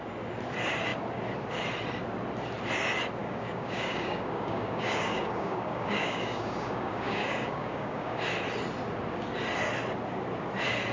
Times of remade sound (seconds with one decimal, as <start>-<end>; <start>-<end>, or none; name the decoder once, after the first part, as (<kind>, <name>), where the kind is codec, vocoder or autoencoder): 3.2-8.2 (codec, DAC)